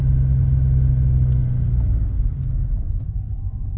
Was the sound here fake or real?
real